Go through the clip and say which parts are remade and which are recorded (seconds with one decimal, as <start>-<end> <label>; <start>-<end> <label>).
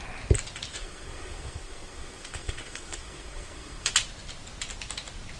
0.0-0.7 recorded; 0.7-3.9 remade; 3.9-5.4 recorded